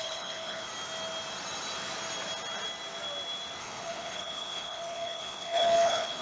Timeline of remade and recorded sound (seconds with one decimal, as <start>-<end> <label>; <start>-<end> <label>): 0.0-0.7 remade; 0.7-3.6 recorded; 3.6-6.2 remade